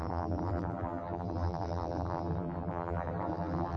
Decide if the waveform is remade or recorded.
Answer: remade